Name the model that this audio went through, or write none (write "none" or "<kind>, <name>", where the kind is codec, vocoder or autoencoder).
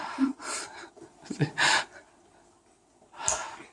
vocoder, BigVGAN v2